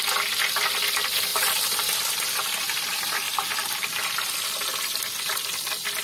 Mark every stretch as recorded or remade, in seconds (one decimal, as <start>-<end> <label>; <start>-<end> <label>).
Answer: 0.0-1.3 recorded; 1.3-4.9 remade; 4.9-6.0 recorded